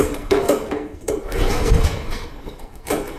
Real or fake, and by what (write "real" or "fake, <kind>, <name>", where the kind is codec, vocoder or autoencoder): fake, codec, SNAC